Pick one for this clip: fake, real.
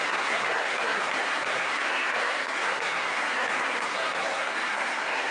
fake